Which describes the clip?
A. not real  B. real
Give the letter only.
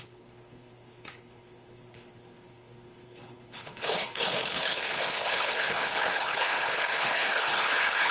A